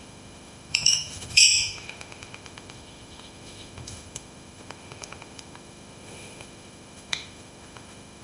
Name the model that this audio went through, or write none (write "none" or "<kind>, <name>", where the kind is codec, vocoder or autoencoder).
autoencoder, DAC-VAE